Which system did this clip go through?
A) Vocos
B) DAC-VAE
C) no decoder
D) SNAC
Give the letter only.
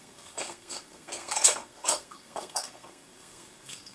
D